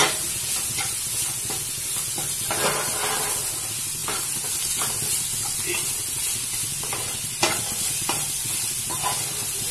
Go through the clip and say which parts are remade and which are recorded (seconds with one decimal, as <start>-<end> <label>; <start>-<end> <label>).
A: 0.0-9.7 recorded

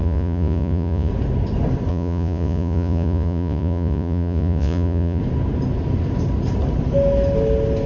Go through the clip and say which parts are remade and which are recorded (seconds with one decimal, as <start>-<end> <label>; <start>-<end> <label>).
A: 0.0-1.1 remade; 1.1-1.9 recorded; 1.9-5.2 remade; 5.2-7.9 recorded